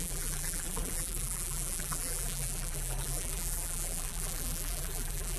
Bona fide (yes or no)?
no